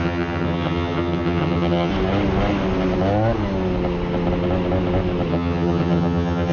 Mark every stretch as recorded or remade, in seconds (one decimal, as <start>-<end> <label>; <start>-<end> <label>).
0.0-1.9 remade; 1.9-5.3 recorded; 5.3-6.5 remade